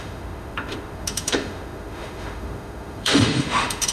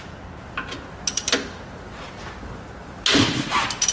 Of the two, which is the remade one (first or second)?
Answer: first